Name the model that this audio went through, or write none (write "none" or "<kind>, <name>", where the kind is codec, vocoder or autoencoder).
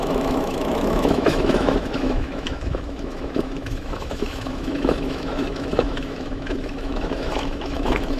autoencoder, DAC-VAE